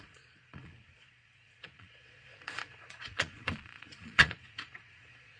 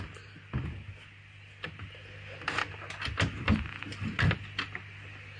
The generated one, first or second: first